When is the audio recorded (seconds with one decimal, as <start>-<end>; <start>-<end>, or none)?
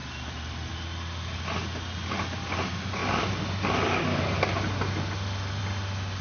0.7-6.2